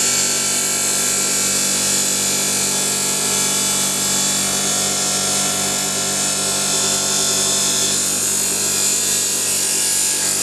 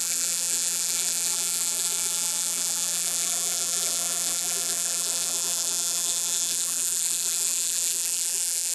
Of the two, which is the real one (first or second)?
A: first